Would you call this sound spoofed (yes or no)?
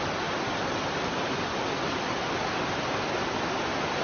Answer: no